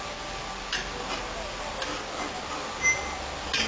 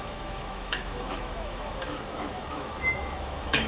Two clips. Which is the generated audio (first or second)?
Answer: second